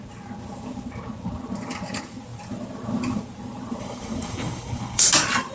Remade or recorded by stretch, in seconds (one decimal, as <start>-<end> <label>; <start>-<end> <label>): 0.0-3.8 recorded; 3.8-5.1 remade; 5.1-5.5 recorded